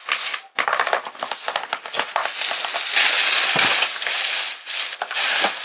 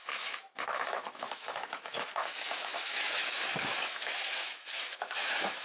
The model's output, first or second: second